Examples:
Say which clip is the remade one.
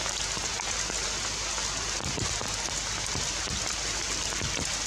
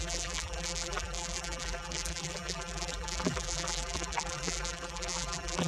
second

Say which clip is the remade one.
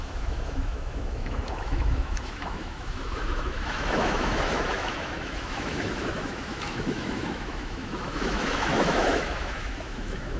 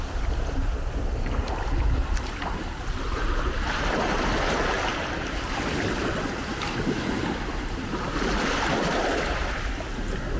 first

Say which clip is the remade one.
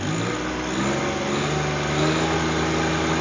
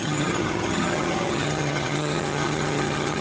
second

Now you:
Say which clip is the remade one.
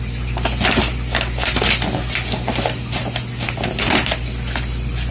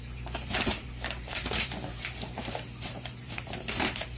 second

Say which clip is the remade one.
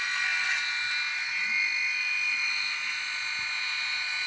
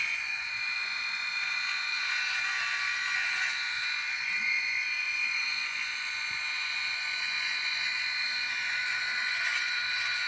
second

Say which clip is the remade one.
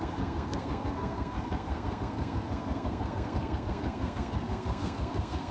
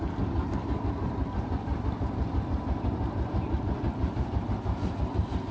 first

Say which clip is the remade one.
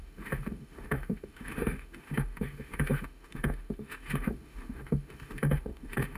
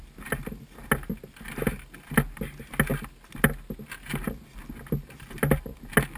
first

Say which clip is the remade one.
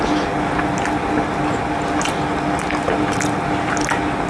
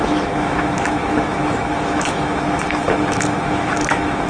second